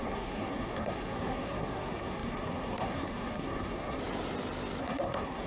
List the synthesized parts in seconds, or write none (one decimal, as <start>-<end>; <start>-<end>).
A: 0.0-4.0; 4.8-5.5